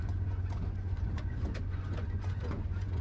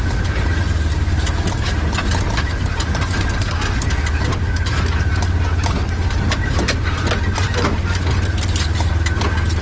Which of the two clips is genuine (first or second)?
second